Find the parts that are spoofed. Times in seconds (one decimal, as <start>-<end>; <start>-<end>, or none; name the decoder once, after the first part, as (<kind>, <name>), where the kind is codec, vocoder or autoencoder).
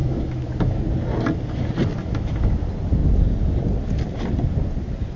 0.0-0.8 (autoencoder, DAC-VAE); 2.0-2.6